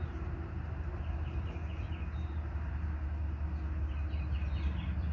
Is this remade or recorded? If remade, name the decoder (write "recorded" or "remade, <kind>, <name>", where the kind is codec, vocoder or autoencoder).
recorded